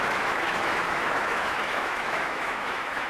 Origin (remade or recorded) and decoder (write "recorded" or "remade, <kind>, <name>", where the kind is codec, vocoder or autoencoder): remade, autoencoder, DAC-VAE